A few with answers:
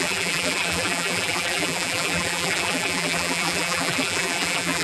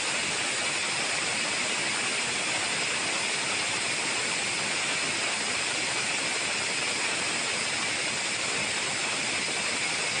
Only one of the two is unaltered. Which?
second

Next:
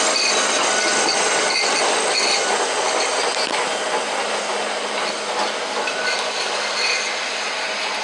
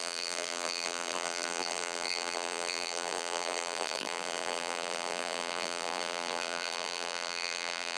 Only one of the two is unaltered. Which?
first